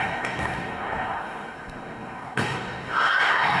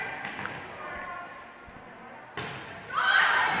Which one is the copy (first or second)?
first